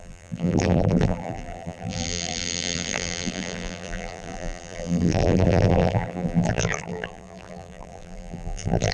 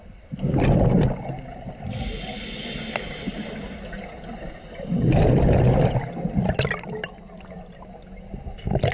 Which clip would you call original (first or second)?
second